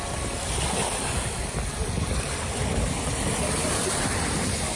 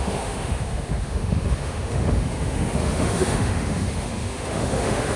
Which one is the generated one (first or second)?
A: second